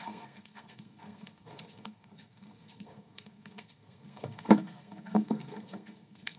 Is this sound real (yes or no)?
no